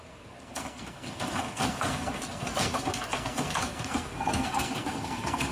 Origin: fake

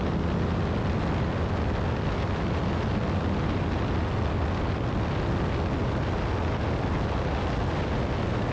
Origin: real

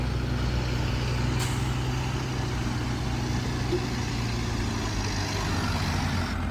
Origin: real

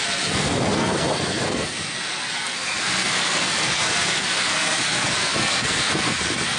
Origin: fake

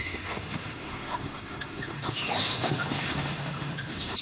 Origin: fake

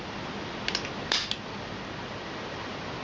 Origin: real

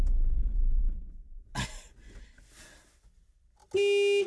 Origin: real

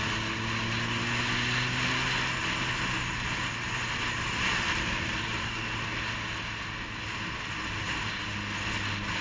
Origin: real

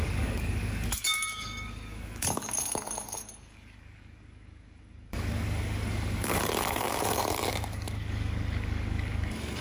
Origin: fake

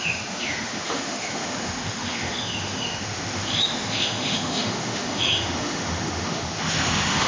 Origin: fake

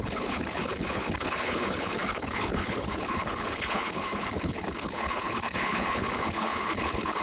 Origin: fake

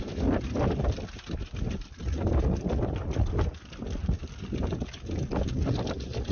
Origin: real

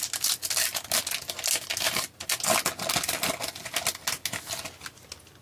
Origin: real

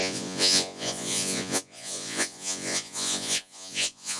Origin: fake